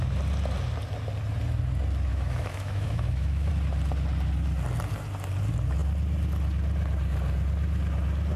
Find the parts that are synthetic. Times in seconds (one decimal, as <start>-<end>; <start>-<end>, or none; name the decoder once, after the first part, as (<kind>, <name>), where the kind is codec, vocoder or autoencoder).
2.1-3.5 (autoencoder, DAC-VAE)